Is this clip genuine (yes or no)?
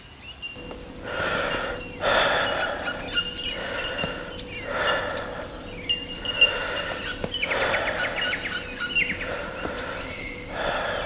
yes